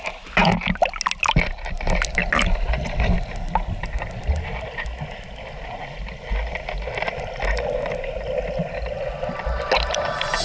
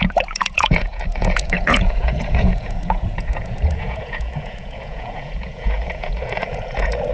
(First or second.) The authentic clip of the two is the first